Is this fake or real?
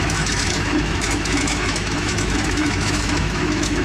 fake